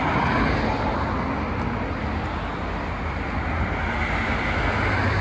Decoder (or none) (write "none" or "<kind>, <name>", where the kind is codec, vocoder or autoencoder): none